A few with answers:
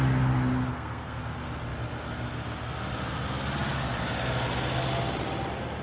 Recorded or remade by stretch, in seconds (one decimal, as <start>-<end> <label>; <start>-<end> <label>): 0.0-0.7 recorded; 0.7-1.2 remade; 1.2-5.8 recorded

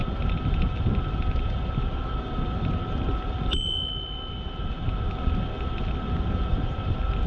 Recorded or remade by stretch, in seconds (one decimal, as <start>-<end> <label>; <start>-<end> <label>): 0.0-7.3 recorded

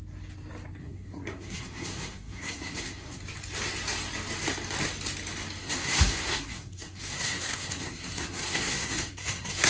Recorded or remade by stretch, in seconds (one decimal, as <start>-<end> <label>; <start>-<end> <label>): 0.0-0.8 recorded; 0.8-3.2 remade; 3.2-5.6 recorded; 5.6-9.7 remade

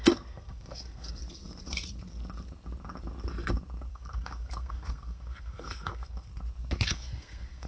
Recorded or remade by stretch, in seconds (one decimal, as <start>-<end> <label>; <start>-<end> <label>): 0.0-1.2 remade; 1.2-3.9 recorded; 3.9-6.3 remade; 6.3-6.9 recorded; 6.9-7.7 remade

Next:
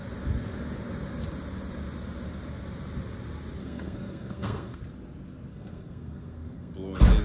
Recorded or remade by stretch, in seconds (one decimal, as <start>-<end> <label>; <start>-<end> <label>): 0.0-3.6 recorded; 3.6-4.8 remade; 4.8-5.5 recorded; 5.5-6.7 remade; 6.7-7.2 recorded

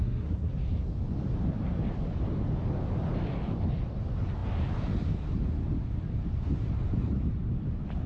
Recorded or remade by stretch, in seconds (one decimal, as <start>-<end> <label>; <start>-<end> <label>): 0.0-0.5 remade; 0.5-8.1 recorded

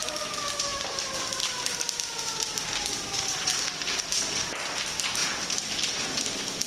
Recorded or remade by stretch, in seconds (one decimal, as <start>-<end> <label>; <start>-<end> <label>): 0.0-6.7 recorded

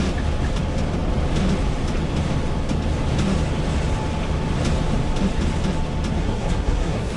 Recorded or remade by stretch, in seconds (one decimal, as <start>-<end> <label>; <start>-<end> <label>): 0.0-6.2 recorded; 6.2-7.2 remade